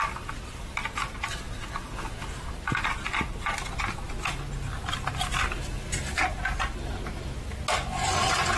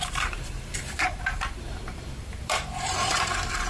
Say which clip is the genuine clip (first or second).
first